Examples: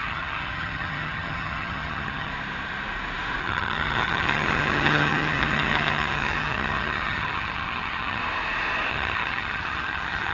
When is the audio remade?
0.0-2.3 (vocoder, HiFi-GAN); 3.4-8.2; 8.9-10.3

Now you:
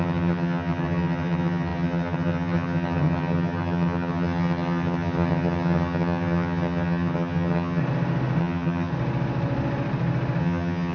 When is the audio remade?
0.0-7.8 (vocoder, HiFi-GAN); 8.4-8.9; 10.4-10.9